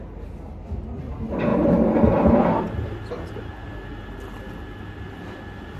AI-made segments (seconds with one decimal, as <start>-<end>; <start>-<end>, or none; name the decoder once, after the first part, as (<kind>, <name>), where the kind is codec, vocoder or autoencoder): none